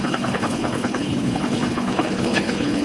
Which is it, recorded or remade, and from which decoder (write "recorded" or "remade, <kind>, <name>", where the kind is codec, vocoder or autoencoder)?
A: remade, codec, HILCodec